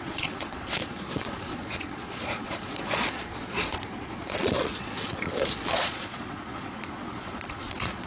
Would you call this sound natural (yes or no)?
no